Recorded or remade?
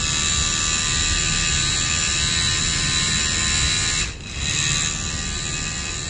recorded